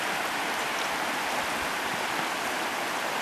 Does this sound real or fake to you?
real